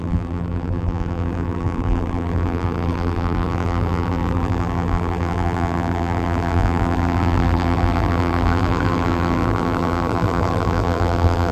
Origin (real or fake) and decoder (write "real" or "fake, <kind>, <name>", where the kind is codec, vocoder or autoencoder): fake, vocoder, BigVGAN v2